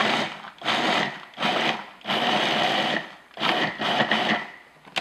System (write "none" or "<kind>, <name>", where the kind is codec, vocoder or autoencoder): none